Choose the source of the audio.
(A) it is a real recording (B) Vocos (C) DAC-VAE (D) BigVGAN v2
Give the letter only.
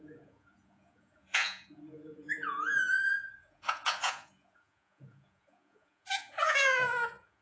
B